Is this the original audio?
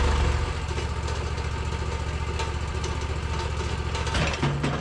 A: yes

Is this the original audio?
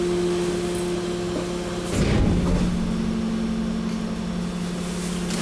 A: yes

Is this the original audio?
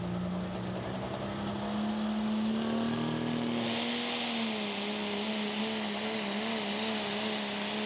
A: yes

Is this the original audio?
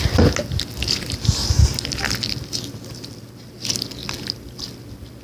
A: yes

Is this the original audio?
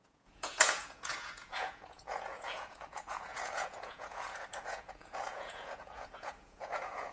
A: no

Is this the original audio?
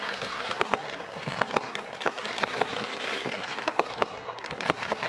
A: no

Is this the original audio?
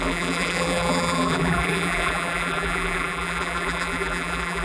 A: no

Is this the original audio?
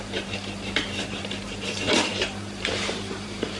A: no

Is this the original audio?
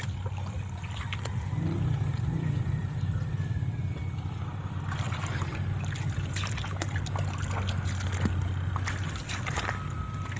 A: yes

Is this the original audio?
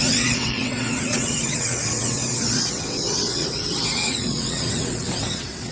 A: no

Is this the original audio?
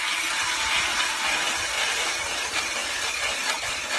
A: yes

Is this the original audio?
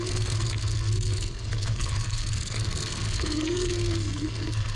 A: no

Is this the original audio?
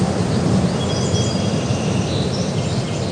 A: no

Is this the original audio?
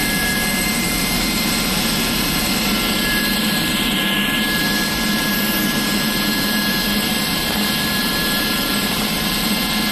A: no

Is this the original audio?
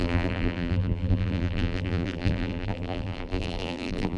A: no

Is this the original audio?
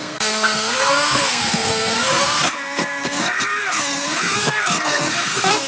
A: no